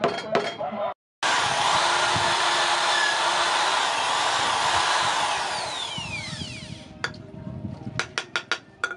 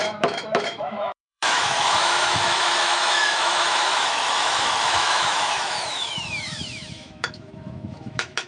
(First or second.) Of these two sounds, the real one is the first